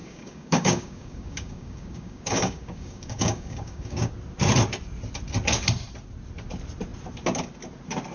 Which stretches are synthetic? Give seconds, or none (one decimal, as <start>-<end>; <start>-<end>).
0.0-4.1